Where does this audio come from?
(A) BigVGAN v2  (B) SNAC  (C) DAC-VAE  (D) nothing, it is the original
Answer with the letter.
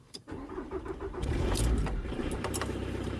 A